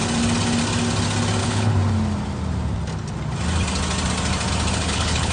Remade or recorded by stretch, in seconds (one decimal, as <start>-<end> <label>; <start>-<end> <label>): 0.0-1.4 recorded; 1.4-1.8 remade; 1.8-4.7 recorded; 4.7-5.3 remade